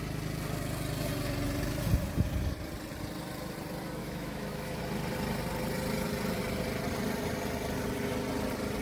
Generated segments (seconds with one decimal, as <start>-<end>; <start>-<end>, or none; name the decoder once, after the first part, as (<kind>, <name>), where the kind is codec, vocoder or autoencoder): 4.0-4.8 (autoencoder, DAC-VAE)